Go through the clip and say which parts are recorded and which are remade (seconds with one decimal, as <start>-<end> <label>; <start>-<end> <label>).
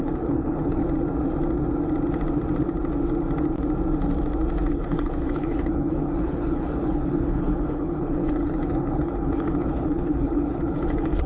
0.0-0.8 remade; 0.8-4.7 recorded; 4.7-11.3 remade